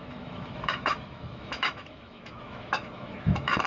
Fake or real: fake